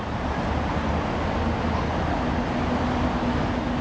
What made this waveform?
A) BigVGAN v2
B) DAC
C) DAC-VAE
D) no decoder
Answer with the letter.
D